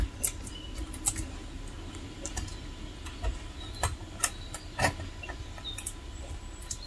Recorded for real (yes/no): yes